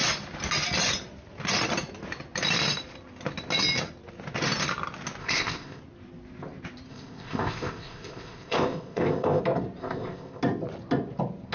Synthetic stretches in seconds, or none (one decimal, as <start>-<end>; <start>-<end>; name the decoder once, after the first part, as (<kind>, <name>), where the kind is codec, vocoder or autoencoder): 5.2-5.8 (codec, ZipCodec); 6.9-9.4; 9.8-10.4